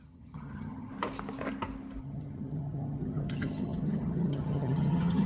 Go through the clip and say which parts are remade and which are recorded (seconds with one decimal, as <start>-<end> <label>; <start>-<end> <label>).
0.0-0.9 remade; 0.9-2.0 recorded; 2.0-5.3 remade